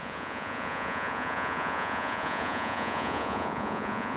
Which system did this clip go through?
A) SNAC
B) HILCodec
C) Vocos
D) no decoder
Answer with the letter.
C